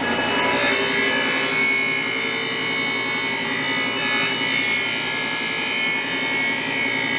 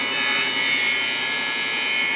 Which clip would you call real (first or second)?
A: first